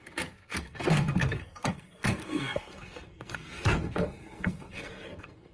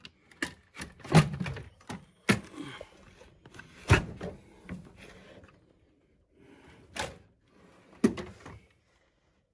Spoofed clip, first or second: first